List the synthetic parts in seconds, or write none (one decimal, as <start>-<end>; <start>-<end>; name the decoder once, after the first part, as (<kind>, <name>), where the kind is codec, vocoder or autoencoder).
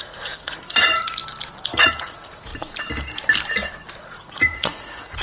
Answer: 0.0-1.2 (vocoder, Vocos); 1.8-2.5; 4.0-5.2